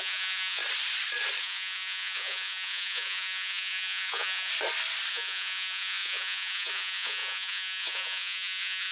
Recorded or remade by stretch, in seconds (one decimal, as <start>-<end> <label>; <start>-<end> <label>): 0.0-0.6 remade; 0.6-1.4 recorded; 1.4-4.5 remade; 4.5-5.1 recorded; 5.1-8.9 remade